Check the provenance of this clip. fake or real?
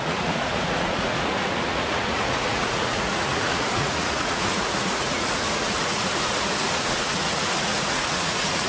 fake